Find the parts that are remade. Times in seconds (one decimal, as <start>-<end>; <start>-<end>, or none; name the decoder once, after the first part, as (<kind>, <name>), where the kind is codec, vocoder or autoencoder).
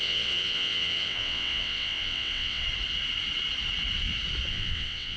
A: 0.0-2.6 (vocoder, WaveNeXt); 4.5-5.2